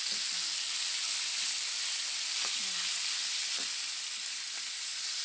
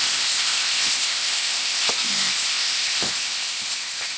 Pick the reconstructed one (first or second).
second